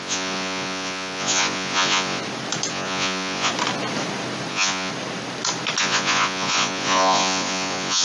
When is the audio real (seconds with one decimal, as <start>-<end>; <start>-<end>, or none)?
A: 2.2-2.7; 3.5-4.5; 4.9-5.8